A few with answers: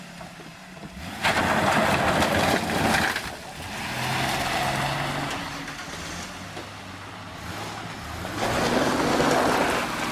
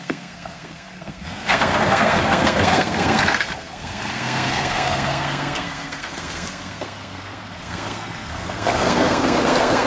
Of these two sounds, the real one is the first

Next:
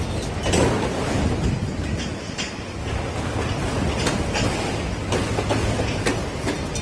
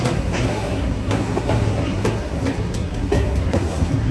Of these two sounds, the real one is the first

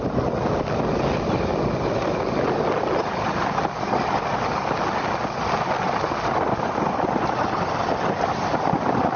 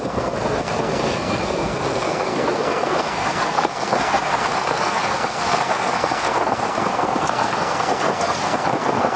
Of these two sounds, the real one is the first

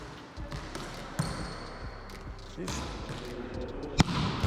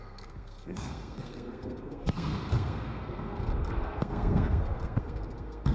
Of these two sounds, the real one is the first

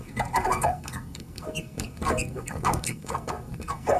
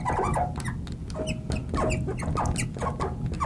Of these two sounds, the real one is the second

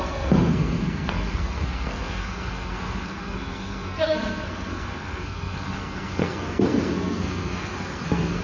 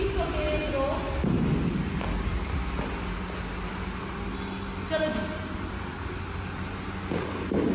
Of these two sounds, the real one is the second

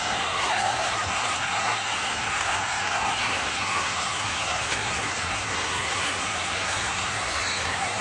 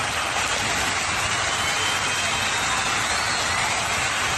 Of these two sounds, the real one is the second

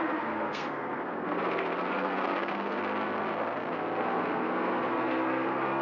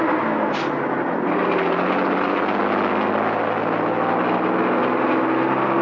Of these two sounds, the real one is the second